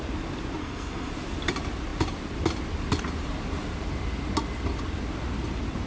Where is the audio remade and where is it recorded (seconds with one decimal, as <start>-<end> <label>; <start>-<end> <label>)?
0.0-0.6 recorded; 0.6-1.1 remade; 1.1-5.9 recorded